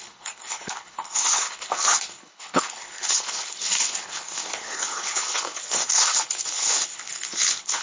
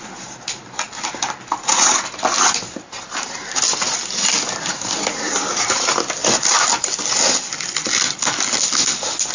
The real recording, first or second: second